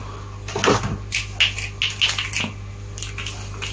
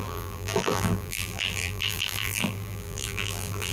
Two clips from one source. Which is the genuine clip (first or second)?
first